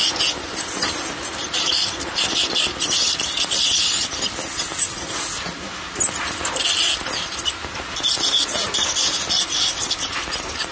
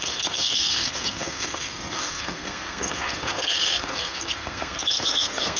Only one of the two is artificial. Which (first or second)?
second